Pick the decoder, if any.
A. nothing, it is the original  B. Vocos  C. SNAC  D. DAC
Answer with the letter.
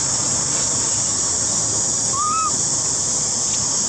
A